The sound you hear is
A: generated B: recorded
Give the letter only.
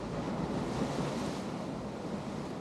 B